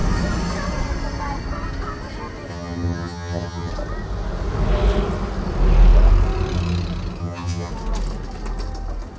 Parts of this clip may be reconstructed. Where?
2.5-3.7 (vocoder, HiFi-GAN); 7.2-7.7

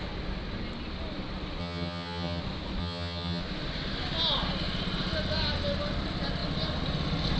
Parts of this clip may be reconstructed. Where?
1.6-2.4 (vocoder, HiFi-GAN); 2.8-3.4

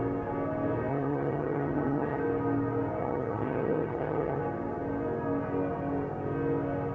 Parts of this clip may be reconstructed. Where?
0.9-2.2 (vocoder, HiFi-GAN); 3.0-4.4